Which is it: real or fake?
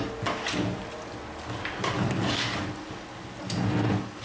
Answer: real